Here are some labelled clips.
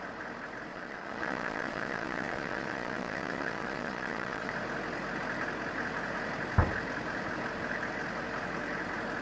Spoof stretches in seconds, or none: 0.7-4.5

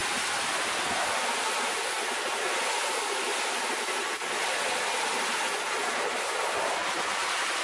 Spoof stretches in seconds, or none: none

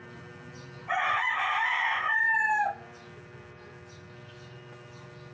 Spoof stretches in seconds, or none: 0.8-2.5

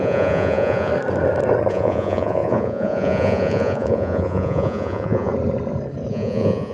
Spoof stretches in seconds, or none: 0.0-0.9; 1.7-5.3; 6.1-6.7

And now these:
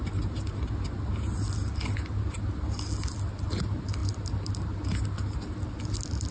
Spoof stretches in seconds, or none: none

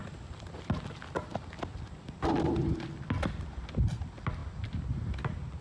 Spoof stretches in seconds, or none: none